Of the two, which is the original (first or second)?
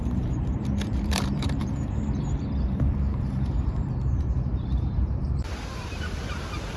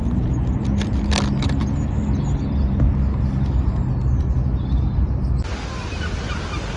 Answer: second